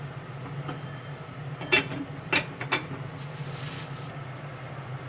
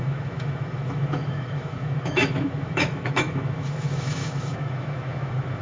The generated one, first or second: second